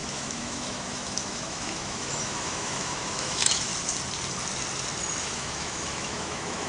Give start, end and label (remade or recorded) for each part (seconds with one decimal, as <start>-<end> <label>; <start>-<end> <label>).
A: 0.0-3.7 remade; 3.7-5.2 recorded; 5.2-6.7 remade